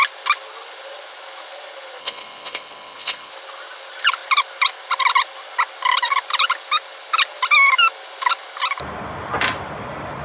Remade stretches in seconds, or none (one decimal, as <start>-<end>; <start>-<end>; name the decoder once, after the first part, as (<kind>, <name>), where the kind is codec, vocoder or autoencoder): 2.0-3.3 (codec, HILCodec)